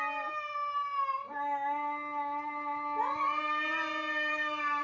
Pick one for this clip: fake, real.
real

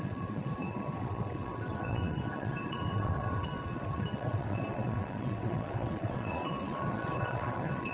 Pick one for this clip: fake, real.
fake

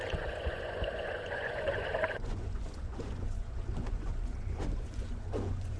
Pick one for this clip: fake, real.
fake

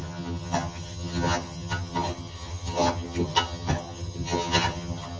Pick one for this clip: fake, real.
fake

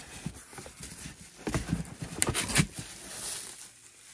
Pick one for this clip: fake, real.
real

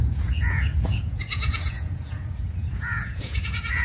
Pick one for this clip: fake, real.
fake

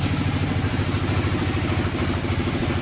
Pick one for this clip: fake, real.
real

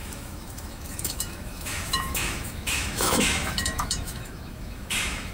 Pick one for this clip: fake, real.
fake